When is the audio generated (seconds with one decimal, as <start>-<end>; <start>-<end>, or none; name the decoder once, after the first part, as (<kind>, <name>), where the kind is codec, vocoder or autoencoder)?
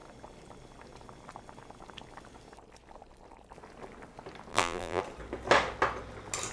4.5-5.0 (vocoder, BigVGAN v2)